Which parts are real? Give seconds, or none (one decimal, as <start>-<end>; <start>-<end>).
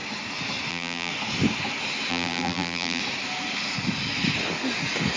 0.0-0.7; 1.1-2.1; 3.0-5.2